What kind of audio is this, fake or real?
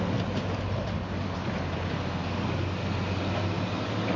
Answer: real